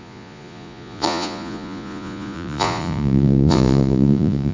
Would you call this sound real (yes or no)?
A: no